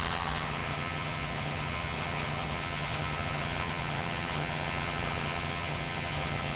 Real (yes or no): no